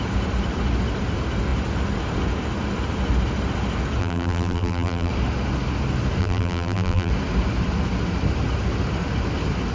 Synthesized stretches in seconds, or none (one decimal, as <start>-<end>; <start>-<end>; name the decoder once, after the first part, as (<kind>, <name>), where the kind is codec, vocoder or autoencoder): 4.0-5.1 (vocoder, BigVGAN v2); 6.2-7.1